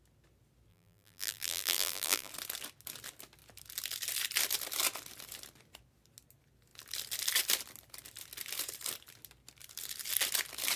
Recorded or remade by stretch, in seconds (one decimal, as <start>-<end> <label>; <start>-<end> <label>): 0.0-0.7 recorded; 0.7-2.3 remade; 2.3-10.8 recorded